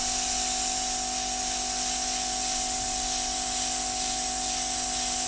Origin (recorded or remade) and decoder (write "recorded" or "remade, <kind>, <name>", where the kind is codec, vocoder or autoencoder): recorded